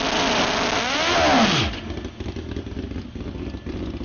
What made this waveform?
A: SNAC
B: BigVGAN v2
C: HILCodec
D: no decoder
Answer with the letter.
D